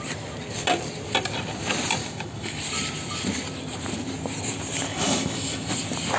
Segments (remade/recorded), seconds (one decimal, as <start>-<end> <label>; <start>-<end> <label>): 0.0-2.0 recorded; 2.0-2.6 remade; 2.6-4.9 recorded; 4.9-5.7 remade; 5.7-6.2 recorded